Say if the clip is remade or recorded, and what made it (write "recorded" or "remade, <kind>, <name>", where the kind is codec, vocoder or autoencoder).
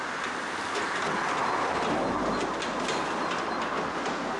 recorded